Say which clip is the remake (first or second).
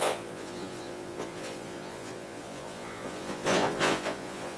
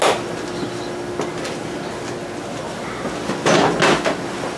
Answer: first